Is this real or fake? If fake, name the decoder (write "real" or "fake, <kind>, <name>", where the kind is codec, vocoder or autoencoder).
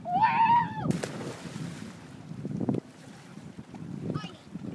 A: fake, vocoder, BigVGAN v2